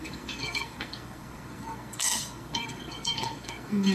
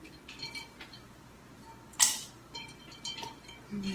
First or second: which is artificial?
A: first